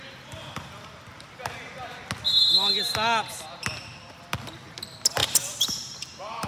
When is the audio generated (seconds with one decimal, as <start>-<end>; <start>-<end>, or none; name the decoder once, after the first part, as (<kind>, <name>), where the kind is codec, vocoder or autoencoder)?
5.2-6.5 (vocoder, BigVGAN v2)